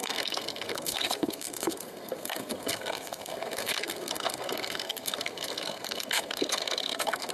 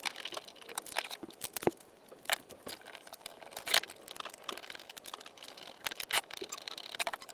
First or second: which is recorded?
second